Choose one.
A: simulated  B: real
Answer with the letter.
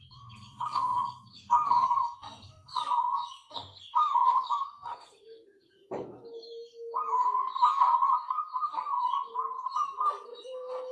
A